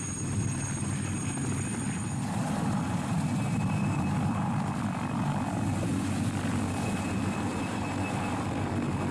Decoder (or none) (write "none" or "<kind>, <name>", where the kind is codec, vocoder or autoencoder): none